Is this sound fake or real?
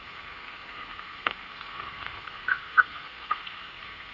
fake